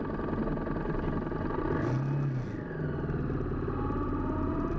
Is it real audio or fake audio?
real